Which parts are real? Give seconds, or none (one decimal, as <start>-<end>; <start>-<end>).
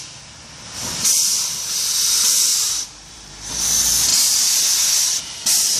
0.0-2.5; 3.5-5.8